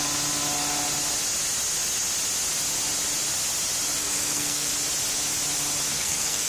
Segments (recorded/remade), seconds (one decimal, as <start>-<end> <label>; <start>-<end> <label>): 0.0-4.0 recorded; 4.0-4.7 remade; 4.7-5.9 recorded; 5.9-6.5 remade